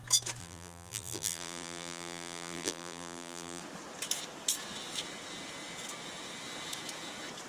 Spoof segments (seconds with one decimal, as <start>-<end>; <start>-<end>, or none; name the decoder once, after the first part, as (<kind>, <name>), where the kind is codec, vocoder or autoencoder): 0.4-3.6 (vocoder, BigVGAN v2)